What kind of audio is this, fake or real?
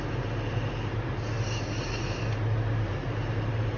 real